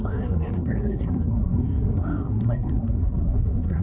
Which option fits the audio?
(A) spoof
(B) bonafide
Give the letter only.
A